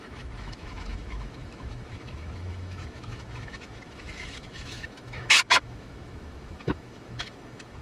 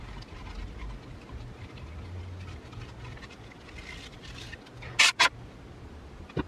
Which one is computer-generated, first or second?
first